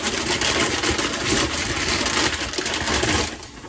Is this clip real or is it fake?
real